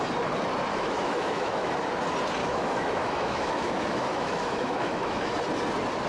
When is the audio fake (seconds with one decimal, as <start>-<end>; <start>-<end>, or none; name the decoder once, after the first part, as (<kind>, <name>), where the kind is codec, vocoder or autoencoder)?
0.7-1.7 (autoencoder, DAC-VAE); 2.4-5.3